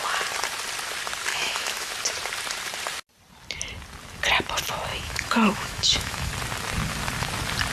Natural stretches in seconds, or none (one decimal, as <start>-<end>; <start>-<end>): 0.0-1.3; 1.9-4.9; 6.3-7.7